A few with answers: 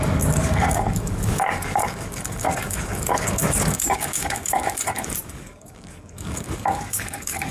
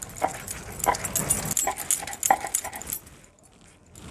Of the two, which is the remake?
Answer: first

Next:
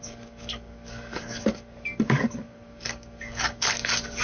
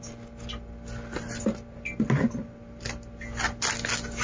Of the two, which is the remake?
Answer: first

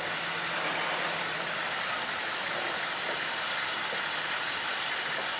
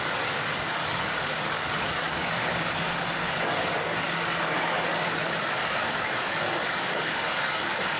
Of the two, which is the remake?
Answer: second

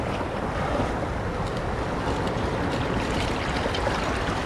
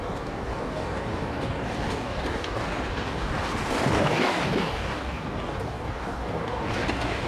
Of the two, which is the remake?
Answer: second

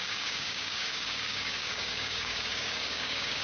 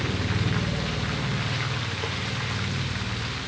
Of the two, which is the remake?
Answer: first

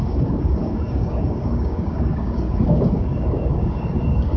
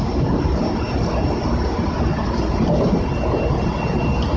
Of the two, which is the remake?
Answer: first